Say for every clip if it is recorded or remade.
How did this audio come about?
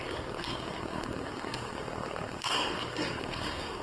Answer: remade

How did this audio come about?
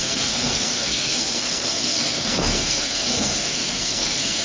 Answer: remade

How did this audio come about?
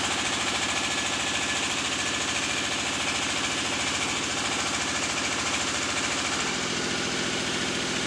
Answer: recorded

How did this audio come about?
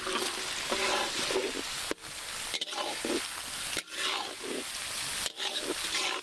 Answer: recorded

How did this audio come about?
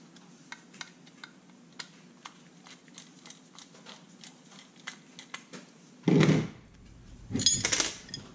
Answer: recorded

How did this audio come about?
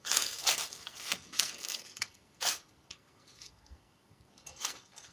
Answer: remade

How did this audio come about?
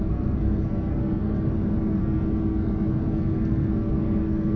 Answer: remade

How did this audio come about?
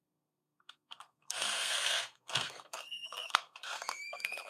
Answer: remade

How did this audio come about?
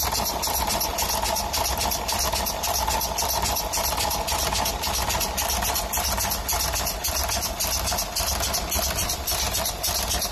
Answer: recorded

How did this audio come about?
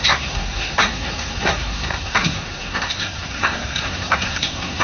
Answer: remade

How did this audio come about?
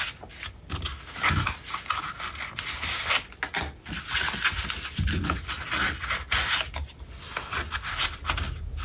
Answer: recorded